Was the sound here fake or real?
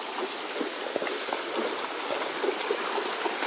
real